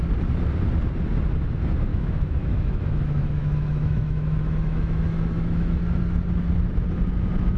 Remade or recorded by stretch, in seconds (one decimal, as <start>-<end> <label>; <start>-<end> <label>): 0.0-1.9 recorded; 1.9-5.8 remade; 5.8-7.6 recorded

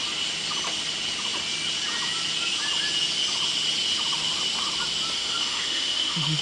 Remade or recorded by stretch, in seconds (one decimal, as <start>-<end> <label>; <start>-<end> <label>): 0.0-5.2 recorded; 5.2-6.4 remade